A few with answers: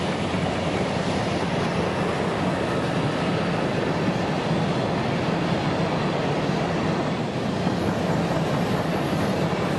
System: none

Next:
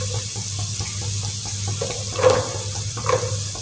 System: none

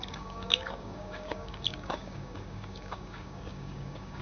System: codec, DAC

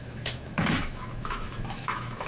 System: autoencoder, DAC-VAE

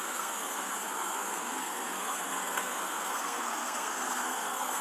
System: codec, SNAC